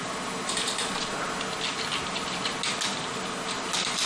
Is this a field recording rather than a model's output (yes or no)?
yes